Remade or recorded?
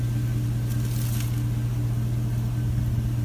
recorded